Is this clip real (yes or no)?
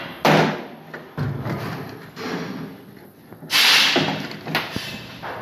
yes